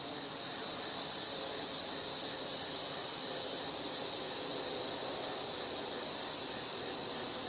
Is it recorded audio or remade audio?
recorded